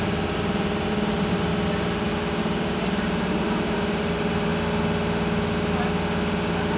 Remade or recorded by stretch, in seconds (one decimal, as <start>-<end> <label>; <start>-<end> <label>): 0.0-1.5 remade; 1.5-2.4 recorded; 2.4-4.5 remade; 4.5-6.8 recorded